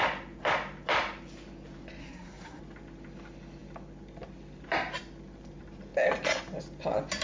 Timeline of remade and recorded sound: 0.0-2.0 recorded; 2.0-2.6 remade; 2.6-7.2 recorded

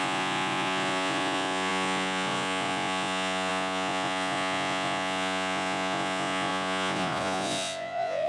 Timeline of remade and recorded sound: 0.0-8.3 remade

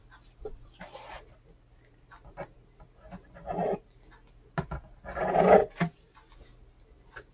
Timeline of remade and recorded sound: 0.0-5.6 recorded; 5.6-6.3 remade; 6.3-7.3 recorded

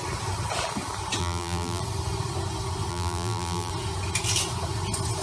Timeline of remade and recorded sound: 0.0-1.2 recorded; 1.2-1.8 remade; 1.8-2.9 recorded; 2.9-3.7 remade; 3.7-5.2 recorded

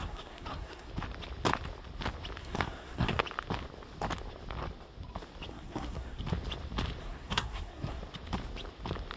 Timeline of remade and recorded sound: 0.0-0.9 remade; 0.9-2.4 recorded; 2.4-3.2 remade; 3.2-5.5 recorded; 5.5-6.2 remade; 6.2-7.0 recorded; 7.0-8.0 remade; 8.0-9.2 recorded

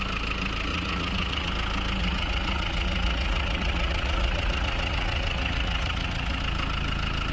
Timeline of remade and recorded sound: 0.0-0.7 recorded; 0.7-1.5 remade; 1.5-2.0 recorded; 2.0-6.4 remade; 6.4-7.3 recorded

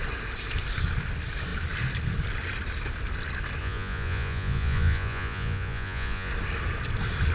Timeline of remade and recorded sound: 0.0-3.6 recorded; 3.6-6.3 remade; 6.3-7.3 recorded